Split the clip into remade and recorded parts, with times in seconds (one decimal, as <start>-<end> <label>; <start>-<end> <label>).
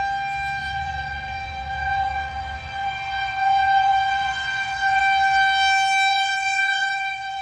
0.0-0.6 recorded; 0.6-5.0 remade; 5.0-6.1 recorded; 6.1-7.4 remade